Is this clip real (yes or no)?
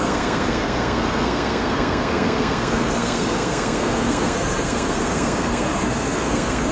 no